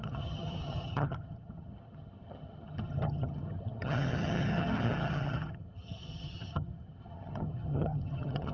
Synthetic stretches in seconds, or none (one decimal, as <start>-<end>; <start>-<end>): 0.0-8.5